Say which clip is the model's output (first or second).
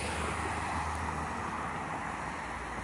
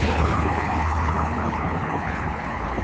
second